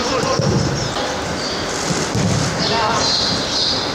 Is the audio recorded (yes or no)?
yes